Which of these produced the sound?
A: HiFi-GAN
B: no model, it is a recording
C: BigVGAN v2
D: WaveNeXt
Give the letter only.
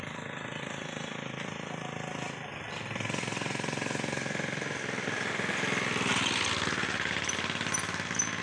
B